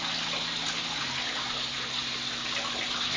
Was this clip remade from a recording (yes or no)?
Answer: no